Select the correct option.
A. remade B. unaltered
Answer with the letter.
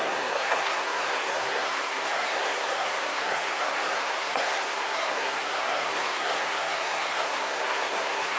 A